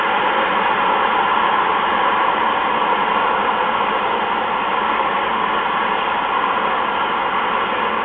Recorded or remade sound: recorded